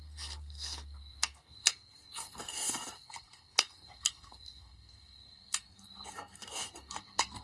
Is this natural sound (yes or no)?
no